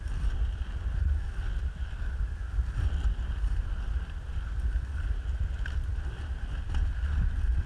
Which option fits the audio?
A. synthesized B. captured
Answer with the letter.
B